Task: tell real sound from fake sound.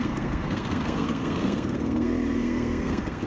fake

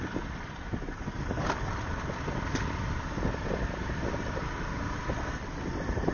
real